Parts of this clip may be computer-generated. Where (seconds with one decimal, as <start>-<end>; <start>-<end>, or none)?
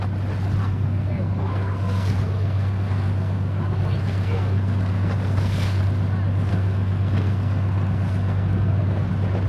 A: 0.6-5.8; 6.5-9.1